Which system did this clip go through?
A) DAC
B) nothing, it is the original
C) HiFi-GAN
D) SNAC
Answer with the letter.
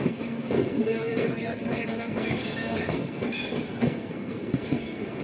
D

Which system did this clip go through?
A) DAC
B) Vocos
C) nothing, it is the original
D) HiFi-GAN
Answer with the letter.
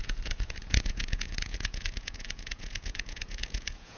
B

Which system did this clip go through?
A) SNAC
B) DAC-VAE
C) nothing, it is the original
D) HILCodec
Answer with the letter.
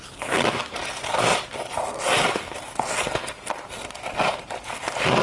C